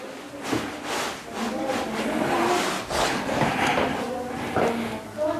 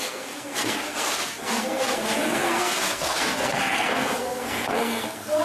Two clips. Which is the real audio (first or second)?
first